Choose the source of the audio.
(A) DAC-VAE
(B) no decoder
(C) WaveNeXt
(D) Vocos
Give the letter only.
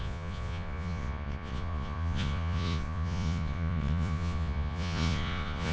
D